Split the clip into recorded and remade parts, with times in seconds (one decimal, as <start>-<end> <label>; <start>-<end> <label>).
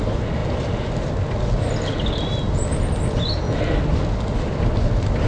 0.0-5.3 recorded